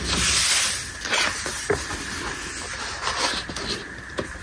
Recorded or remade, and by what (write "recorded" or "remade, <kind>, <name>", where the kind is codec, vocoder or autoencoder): recorded